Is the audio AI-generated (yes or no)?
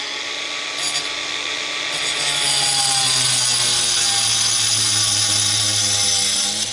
no